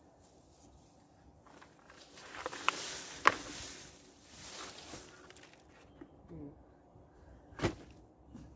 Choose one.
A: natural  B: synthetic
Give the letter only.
A